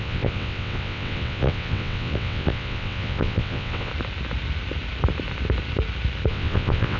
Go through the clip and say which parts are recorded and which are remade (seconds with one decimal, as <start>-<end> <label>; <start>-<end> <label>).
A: 0.0-3.9 remade; 3.9-6.3 recorded; 6.3-7.0 remade